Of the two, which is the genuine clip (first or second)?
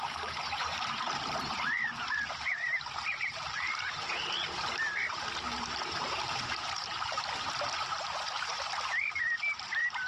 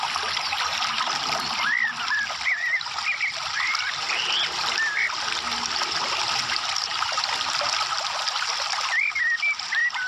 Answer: second